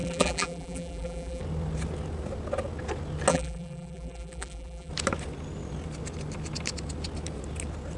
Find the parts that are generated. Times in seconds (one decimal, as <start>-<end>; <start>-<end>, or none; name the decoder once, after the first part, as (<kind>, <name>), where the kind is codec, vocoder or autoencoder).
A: 0.0-1.4 (vocoder, BigVGAN v2); 3.3-4.9